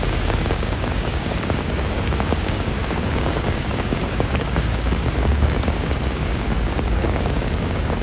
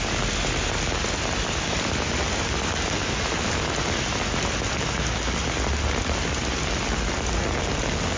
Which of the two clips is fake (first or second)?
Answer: first